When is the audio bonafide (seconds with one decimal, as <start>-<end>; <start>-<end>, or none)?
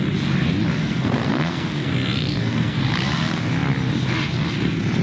0.0-0.8; 2.8-5.0